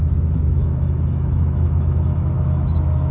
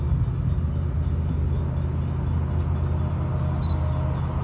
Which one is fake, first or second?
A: first